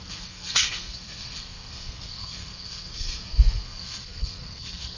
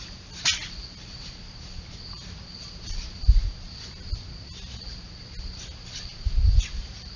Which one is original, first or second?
second